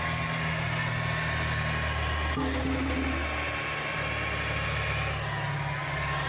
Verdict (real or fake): real